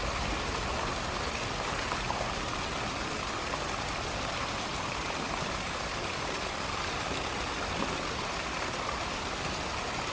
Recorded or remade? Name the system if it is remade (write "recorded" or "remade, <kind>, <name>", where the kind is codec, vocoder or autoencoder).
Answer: recorded